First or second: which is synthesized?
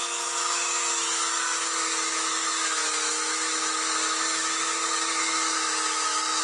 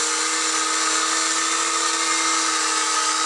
first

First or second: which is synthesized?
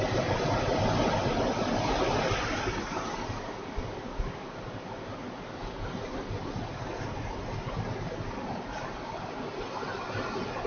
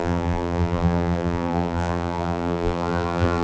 second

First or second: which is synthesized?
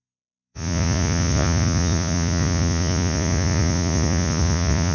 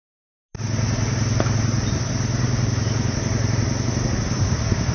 first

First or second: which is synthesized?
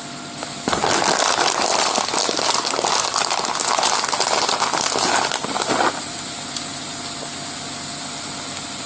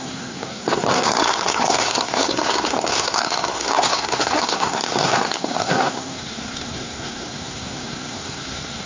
second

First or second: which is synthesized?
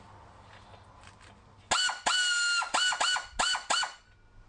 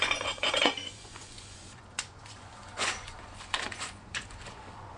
second